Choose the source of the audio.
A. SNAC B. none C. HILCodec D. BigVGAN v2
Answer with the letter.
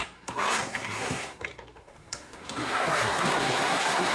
A